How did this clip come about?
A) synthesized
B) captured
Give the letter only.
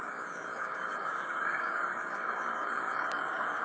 A